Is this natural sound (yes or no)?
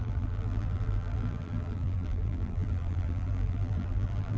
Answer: no